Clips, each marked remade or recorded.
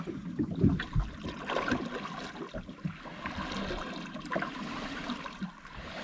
recorded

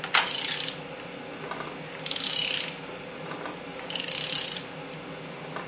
recorded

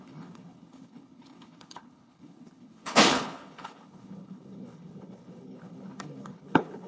remade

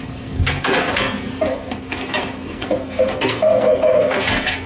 remade